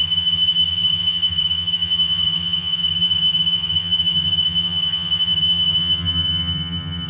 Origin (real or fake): fake